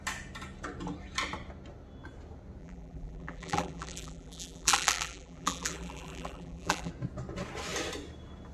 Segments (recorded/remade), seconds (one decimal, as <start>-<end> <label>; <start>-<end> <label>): 0.0-2.6 recorded; 2.6-6.9 remade; 6.9-8.5 recorded